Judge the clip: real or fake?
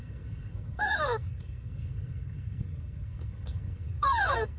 fake